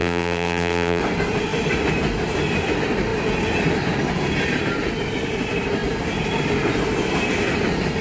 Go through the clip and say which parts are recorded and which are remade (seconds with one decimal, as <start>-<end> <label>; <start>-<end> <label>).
0.0-1.0 remade; 1.0-8.0 recorded